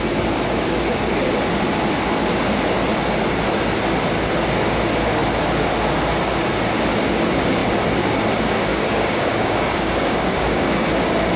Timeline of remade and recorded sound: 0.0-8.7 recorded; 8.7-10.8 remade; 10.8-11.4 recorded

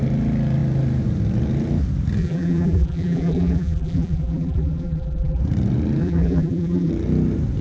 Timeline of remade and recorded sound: 0.0-2.2 recorded; 2.2-5.4 remade; 5.4-6.0 recorded; 6.0-6.9 remade; 6.9-7.6 recorded

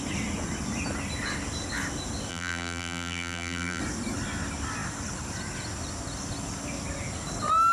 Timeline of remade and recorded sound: 0.0-2.3 recorded; 2.3-3.8 remade; 3.8-7.7 recorded

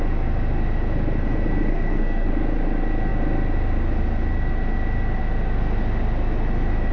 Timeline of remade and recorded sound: 0.0-1.7 recorded; 1.7-2.3 remade; 2.3-6.9 recorded

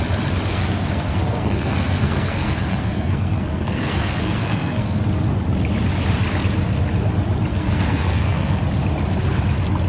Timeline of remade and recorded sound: 0.0-0.5 recorded; 0.5-5.0 remade; 5.0-7.5 recorded; 7.5-8.6 remade; 8.6-9.9 recorded

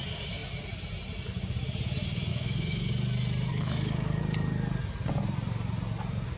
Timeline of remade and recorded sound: 0.0-2.3 recorded; 2.3-2.9 remade; 2.9-3.5 recorded; 3.5-4.2 remade; 4.2-6.4 recorded

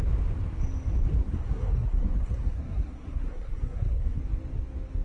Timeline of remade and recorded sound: 0.0-1.2 recorded; 1.2-4.2 remade; 4.2-5.0 recorded

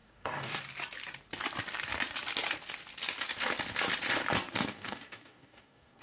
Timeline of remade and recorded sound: 0.0-0.6 remade; 0.6-4.7 recorded; 4.7-6.0 remade